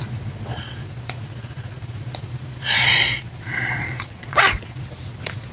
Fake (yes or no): yes